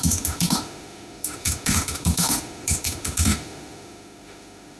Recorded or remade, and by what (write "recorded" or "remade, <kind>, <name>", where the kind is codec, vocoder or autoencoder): remade, autoencoder, DAC-VAE